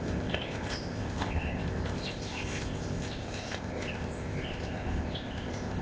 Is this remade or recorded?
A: remade